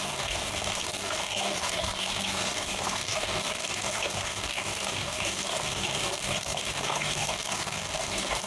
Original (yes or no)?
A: no